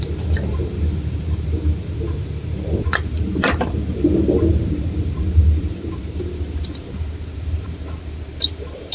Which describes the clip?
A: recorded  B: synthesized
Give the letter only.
B